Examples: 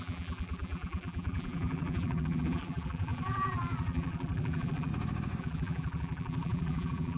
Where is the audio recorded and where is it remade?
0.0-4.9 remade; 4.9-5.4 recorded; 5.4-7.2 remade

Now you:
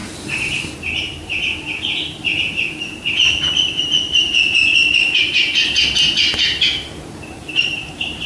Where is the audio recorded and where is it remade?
0.0-8.3 remade

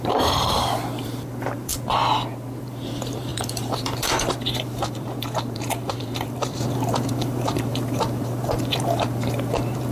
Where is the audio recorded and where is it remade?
0.0-1.7 remade; 1.7-2.6 recorded; 2.6-9.9 remade